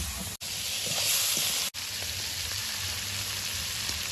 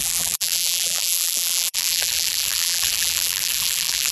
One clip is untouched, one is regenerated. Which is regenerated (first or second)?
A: second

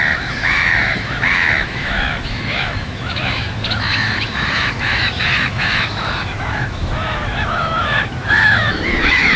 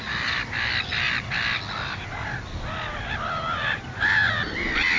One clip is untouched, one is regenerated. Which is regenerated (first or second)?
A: first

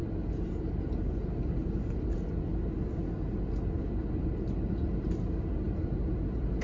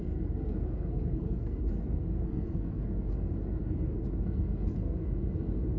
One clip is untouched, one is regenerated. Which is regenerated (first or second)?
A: second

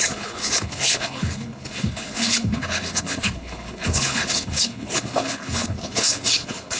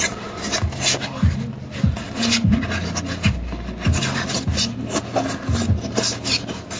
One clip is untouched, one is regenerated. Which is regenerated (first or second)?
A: first